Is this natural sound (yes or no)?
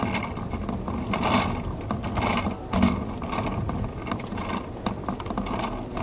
yes